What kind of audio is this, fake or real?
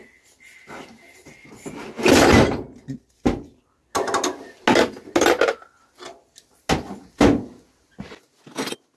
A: real